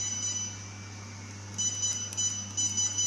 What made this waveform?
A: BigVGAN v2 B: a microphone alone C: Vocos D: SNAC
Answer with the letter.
B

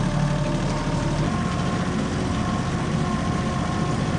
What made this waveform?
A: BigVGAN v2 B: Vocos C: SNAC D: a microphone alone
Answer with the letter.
D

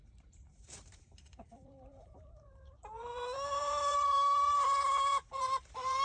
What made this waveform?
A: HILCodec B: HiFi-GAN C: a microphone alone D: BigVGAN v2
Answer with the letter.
D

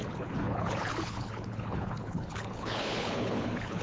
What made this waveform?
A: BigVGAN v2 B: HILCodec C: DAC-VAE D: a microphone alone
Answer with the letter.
B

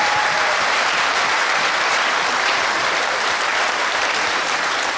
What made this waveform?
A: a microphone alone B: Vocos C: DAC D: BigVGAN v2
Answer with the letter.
D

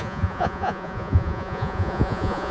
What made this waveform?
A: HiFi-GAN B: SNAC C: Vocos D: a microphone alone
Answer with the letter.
C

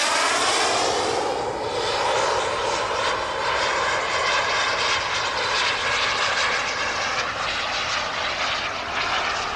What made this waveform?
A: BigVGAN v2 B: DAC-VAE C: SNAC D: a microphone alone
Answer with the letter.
A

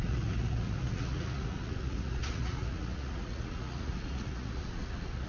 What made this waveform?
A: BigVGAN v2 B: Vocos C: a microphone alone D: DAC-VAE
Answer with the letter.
B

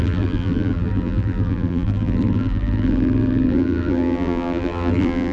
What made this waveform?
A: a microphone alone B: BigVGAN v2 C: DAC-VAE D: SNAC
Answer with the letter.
B